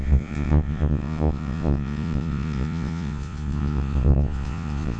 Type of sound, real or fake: fake